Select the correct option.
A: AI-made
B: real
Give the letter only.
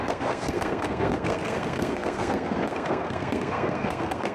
A